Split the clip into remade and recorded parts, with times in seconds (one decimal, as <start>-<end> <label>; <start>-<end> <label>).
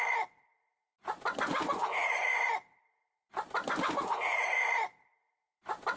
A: 0.0-1.5 recorded; 1.5-5.1 remade; 5.1-6.0 recorded